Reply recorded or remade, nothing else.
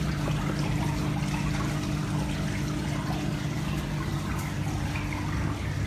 recorded